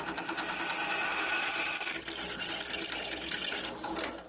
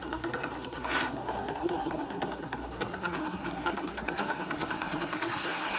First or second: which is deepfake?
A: second